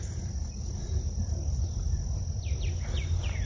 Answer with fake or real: real